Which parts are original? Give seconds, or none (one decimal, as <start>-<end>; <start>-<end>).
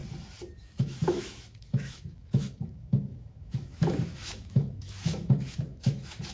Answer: 0.0-0.6